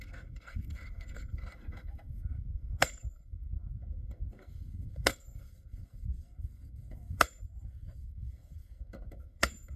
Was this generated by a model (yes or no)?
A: yes